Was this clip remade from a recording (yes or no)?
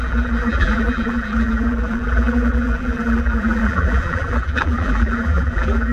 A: yes